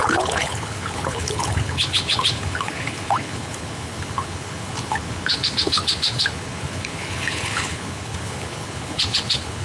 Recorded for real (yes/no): no